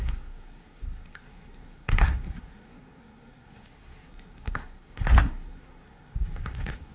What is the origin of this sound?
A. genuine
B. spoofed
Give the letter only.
B